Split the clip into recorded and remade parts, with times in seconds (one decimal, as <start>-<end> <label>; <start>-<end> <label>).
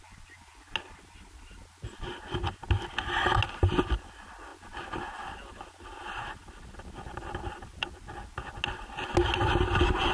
0.0-10.1 recorded